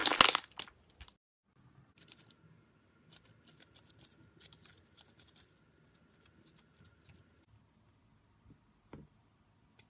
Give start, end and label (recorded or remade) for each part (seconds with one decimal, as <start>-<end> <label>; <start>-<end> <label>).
0.0-9.9 recorded